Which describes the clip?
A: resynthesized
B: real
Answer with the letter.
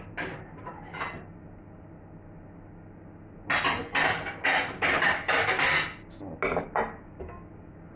B